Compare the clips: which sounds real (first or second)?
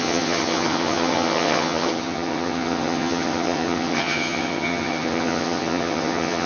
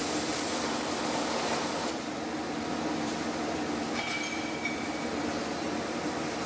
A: second